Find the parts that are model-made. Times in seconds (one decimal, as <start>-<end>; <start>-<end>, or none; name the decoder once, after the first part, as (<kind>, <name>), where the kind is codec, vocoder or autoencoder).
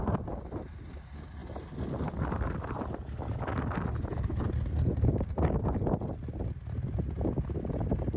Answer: none